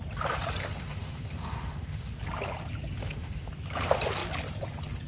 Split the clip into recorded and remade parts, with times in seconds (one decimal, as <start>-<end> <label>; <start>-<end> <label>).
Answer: 0.0-0.6 recorded; 0.6-2.1 remade; 2.1-3.0 recorded; 3.0-3.5 remade; 3.5-5.1 recorded